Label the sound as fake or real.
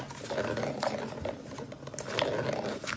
real